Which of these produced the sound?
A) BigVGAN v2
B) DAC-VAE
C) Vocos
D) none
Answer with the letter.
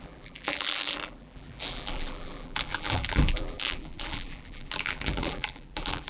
A